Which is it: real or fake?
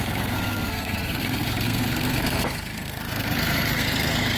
fake